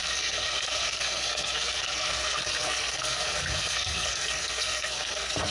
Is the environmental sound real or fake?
fake